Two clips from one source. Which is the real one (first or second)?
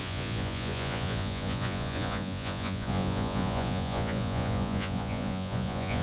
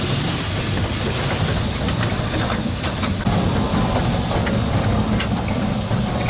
second